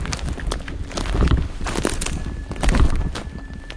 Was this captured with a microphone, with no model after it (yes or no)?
yes